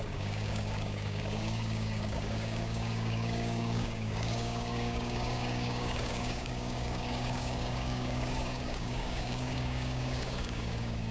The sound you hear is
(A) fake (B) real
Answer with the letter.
A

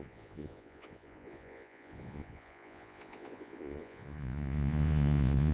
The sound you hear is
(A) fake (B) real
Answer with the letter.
A